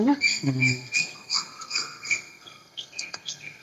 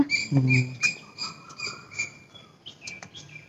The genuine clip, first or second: second